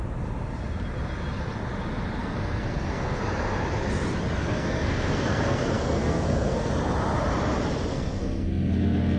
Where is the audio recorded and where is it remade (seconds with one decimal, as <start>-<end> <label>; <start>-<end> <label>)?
0.0-2.2 recorded; 2.2-3.2 remade; 3.2-4.4 recorded; 4.4-6.7 remade; 6.7-7.9 recorded; 7.9-9.2 remade